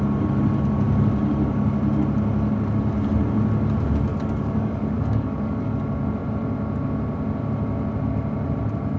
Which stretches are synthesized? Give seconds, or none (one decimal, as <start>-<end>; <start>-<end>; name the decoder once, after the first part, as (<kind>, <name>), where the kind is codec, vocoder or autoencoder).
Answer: 4.1-5.8 (codec, DAC)